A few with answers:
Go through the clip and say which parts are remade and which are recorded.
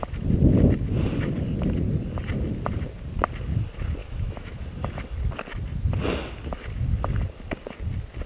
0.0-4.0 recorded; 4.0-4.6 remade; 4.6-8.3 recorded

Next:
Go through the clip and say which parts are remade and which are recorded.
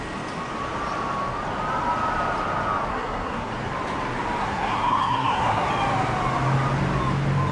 0.0-2.9 recorded; 2.9-3.5 remade; 3.5-4.4 recorded; 4.4-5.7 remade; 5.7-7.5 recorded